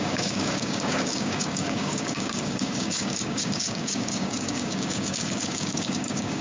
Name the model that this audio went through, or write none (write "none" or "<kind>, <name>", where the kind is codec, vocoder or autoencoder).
codec, DAC